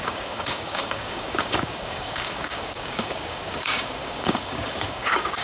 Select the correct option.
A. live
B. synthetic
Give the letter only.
B